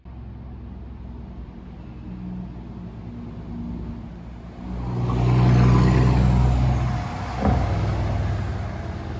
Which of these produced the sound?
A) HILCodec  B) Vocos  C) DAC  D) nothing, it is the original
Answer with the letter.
D